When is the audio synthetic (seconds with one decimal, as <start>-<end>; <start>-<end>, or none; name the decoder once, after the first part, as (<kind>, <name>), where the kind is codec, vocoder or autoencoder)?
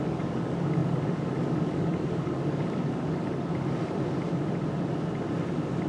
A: 0.0-3.5 (codec, DAC)